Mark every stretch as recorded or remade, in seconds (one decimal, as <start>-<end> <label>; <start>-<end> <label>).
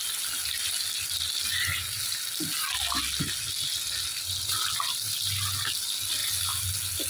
0.0-7.1 recorded